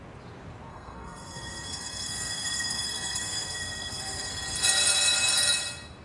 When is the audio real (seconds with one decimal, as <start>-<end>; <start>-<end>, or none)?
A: 0.0-0.7; 4.3-6.0